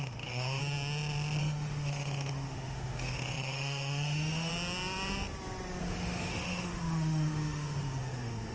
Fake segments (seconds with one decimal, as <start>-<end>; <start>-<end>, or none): 0.0-0.6; 1.4-4.5; 5.8-8.5